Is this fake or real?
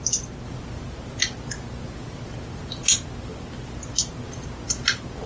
real